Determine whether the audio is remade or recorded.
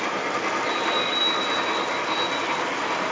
recorded